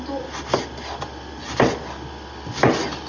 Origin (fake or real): real